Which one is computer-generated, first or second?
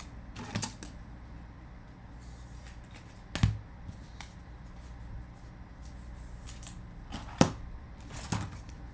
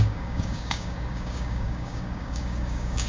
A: second